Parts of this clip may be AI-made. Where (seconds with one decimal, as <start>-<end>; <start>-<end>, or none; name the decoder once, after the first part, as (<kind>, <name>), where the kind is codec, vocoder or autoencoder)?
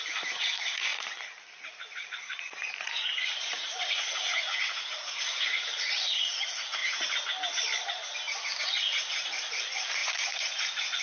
0.0-2.3 (vocoder, Vocos); 3.7-6.8; 8.6-11.0